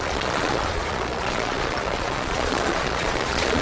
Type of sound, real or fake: fake